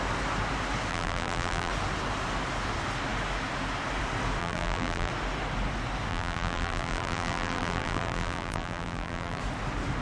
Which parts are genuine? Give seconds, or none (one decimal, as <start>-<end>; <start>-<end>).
0.0-0.9; 1.7-4.4; 5.1-6.1; 9.4-10.0